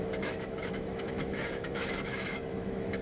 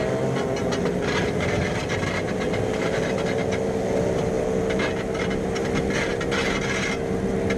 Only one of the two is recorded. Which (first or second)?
second